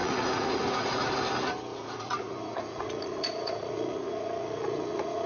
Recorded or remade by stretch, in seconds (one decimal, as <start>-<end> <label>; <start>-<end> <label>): 0.0-1.2 remade; 1.2-1.7 recorded; 1.7-5.3 remade